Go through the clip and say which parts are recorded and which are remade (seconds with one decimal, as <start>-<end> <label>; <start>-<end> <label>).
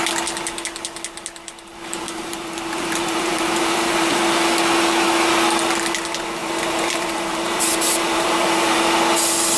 0.0-1.7 recorded; 1.7-4.2 remade; 4.2-6.4 recorded; 6.4-8.8 remade; 8.8-9.6 recorded